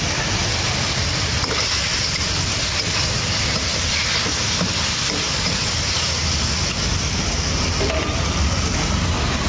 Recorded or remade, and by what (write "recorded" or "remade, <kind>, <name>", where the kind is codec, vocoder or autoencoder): recorded